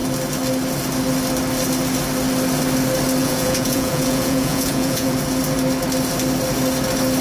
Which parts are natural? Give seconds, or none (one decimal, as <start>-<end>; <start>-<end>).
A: 0.0-3.2; 5.2-7.2